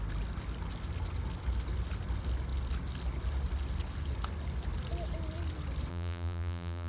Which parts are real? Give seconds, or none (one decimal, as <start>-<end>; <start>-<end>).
0.0-5.9